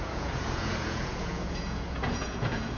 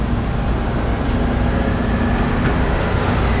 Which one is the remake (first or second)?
first